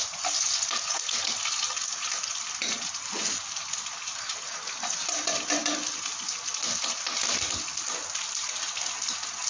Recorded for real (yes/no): yes